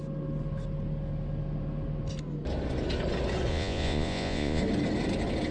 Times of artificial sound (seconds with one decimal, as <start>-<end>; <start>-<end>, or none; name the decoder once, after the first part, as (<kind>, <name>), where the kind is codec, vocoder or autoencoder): 3.5-4.6 (vocoder, Vocos)